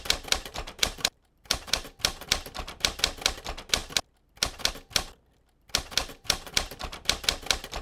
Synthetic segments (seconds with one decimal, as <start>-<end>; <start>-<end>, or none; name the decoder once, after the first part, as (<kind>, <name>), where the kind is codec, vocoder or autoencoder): 0.5-1.9 (vocoder, BigVGAN v2); 6.0-6.8